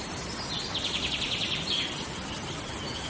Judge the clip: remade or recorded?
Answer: remade